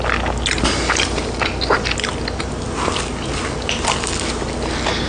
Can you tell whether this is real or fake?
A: real